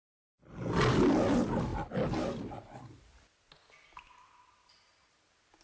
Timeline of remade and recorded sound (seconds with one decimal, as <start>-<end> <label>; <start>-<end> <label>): 0.0-5.6 recorded